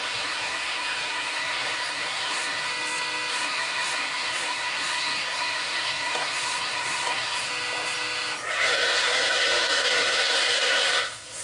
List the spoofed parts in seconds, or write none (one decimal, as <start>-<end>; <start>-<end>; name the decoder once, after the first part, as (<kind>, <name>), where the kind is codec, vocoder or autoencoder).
0.0-2.7 (codec, SNAC); 3.3-7.5; 8.5-11.4